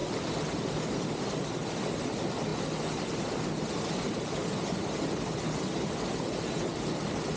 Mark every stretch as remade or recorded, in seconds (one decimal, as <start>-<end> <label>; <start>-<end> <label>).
0.0-7.4 recorded